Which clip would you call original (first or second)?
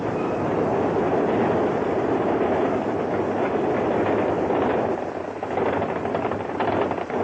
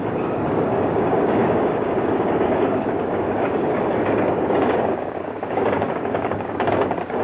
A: first